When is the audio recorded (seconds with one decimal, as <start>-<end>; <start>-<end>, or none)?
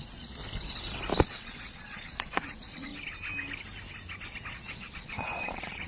0.4-1.2; 2.9-4.5